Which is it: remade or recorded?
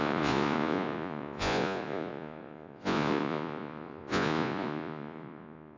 remade